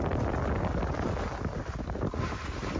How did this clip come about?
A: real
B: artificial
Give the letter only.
A